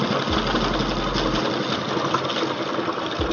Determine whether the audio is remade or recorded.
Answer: recorded